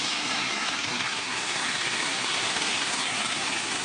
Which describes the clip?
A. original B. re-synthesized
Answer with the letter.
B